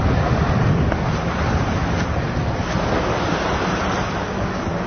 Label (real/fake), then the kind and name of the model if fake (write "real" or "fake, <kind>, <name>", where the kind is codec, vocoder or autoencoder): real